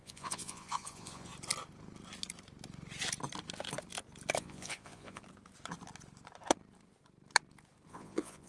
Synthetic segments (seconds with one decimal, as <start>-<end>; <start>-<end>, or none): 0.0-1.3; 4.4-5.2; 7.9-8.5